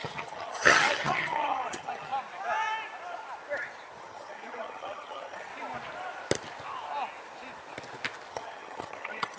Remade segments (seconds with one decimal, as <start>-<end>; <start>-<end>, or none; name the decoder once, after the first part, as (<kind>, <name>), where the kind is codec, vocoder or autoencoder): 0.0-2.1 (vocoder, HiFi-GAN); 4.0-5.5; 8.3-9.4